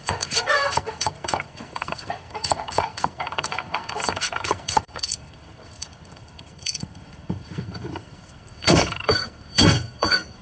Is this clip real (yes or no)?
no